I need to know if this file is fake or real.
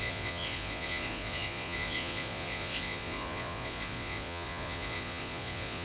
fake